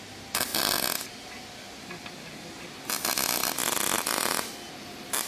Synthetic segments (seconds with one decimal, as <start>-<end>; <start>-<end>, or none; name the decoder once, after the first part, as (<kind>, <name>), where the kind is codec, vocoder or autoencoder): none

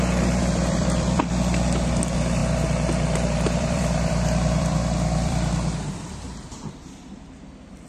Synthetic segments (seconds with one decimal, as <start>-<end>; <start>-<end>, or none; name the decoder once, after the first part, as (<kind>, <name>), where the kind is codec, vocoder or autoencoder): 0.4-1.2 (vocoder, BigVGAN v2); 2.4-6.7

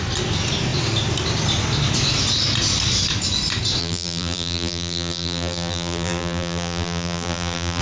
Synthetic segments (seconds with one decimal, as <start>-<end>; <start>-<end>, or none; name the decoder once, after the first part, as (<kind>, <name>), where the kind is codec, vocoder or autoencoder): 3.8-7.8 (vocoder, BigVGAN v2)

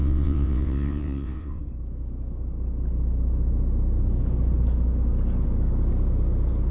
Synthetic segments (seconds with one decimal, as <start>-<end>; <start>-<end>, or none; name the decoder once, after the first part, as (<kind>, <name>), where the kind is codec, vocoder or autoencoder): 0.0-1.6 (vocoder, WaveNeXt)

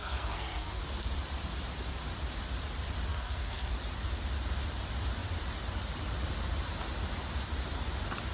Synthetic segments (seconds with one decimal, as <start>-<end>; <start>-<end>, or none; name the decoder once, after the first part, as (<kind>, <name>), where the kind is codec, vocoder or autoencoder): 0.0-0.8 (codec, SNAC); 3.1-3.7